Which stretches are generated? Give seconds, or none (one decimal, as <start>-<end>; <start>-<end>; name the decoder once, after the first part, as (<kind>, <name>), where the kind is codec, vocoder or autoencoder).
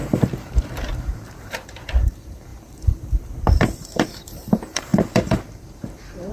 0.0-6.3 (vocoder, BigVGAN v2)